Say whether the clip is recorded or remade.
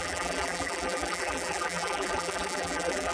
remade